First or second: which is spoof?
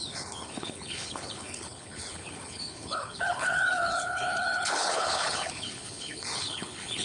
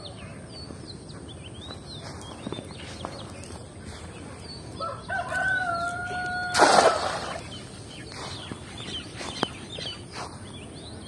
first